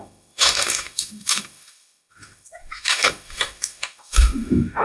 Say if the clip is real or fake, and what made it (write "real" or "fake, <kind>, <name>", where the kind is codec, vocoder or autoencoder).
fake, autoencoder, DAC-VAE